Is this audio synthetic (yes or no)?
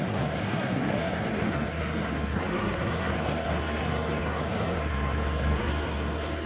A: yes